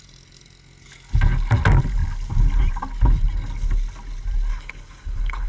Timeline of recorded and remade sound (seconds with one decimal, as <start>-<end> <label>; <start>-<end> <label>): 0.0-4.5 recorded; 4.5-5.5 remade